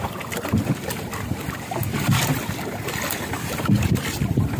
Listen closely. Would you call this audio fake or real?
real